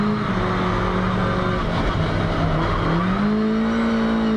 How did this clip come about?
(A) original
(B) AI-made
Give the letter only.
A